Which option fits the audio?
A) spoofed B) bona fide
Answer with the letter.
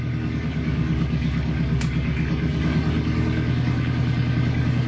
A